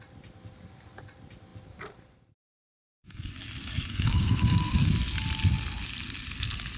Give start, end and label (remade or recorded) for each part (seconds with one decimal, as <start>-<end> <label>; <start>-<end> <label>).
0.0-2.8 recorded; 2.8-3.3 remade; 3.3-3.9 recorded; 3.9-4.9 remade; 4.9-6.8 recorded